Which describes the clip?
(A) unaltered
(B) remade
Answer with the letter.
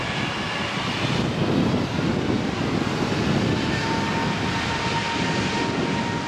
A